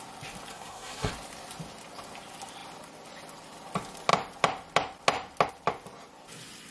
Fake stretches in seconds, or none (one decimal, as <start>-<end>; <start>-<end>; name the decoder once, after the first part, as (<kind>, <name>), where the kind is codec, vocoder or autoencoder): 0.5-1.1 (codec, SNAC)